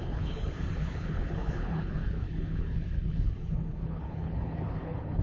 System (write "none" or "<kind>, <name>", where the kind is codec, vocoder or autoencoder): codec, HILCodec